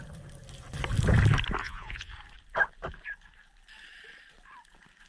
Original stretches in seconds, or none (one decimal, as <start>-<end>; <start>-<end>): 0.0-1.6; 2.1-5.1